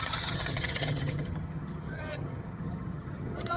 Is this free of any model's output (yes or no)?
no